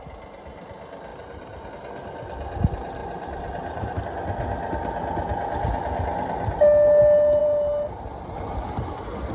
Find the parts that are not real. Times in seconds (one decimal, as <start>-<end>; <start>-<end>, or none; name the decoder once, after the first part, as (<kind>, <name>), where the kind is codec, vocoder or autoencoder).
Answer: 1.1-1.7 (vocoder, BigVGAN v2); 3.0-4.0; 7.4-8.0